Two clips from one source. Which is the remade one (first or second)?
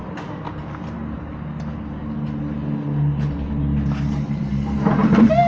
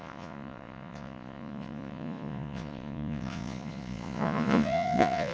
second